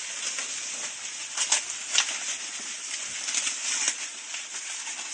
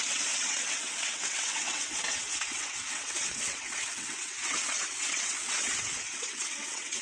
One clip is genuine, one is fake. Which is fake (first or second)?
second